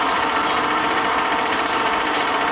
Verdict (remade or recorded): remade